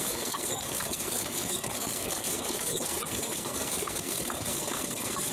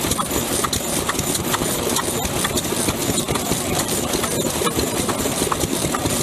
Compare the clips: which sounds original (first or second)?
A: second